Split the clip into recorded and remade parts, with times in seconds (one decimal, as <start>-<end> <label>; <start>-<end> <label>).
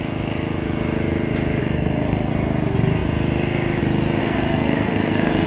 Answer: 0.0-1.6 recorded; 1.6-2.3 remade; 2.3-4.2 recorded; 4.2-5.5 remade